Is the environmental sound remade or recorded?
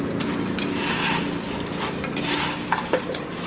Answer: recorded